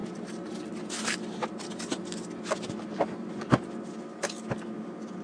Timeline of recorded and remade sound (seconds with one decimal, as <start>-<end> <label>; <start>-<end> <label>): 0.0-5.2 recorded